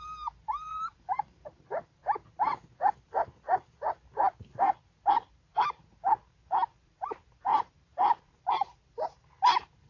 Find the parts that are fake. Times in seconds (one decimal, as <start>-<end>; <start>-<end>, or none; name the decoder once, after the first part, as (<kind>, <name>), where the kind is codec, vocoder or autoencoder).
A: 0.0-2.0 (vocoder, BigVGAN v2); 5.1-9.9